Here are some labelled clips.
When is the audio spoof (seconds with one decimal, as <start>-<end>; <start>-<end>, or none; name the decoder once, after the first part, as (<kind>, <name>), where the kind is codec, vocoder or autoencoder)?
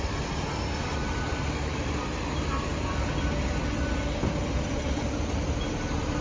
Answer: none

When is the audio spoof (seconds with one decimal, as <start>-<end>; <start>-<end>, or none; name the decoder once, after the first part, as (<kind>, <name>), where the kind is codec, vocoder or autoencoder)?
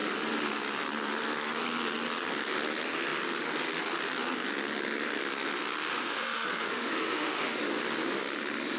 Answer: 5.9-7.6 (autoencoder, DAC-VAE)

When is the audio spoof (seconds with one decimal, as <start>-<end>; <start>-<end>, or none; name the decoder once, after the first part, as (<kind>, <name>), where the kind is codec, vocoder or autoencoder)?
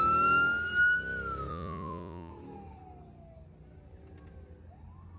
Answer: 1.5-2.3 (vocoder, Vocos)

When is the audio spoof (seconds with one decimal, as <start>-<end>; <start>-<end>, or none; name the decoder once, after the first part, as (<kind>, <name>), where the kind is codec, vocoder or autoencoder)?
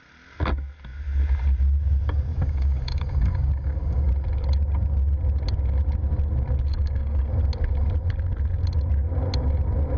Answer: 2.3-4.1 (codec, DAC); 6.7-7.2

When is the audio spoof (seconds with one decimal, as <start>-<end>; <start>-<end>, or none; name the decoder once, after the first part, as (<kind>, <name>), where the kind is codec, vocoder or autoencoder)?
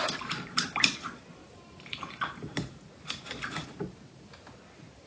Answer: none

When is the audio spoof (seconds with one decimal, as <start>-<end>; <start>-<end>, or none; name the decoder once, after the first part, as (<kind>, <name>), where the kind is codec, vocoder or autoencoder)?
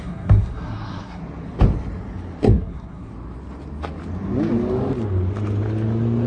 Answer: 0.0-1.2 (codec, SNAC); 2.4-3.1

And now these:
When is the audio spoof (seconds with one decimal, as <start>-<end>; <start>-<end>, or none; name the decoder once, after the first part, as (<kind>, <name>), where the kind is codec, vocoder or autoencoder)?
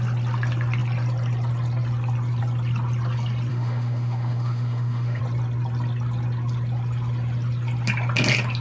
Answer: 3.5-5.2 (autoencoder, DAC-VAE)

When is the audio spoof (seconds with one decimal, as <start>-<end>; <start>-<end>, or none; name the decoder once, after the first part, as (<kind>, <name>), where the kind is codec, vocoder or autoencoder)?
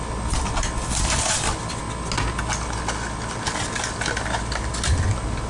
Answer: none